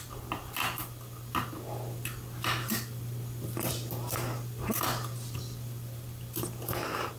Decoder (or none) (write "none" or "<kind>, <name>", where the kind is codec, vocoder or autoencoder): none